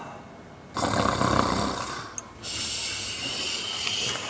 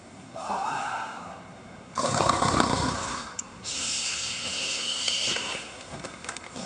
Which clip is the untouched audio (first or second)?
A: first